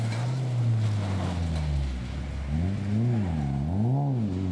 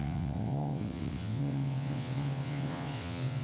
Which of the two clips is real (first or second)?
first